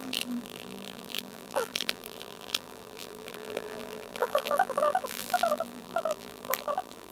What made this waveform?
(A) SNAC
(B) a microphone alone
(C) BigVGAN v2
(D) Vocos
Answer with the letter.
C